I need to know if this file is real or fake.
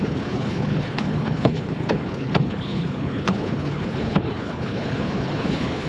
fake